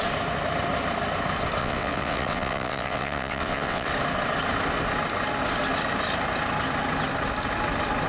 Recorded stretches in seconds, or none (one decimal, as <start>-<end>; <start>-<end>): 0.0-1.6; 3.9-8.1